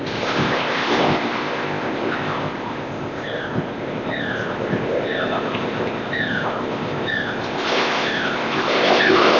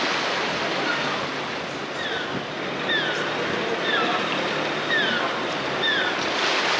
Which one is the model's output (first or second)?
first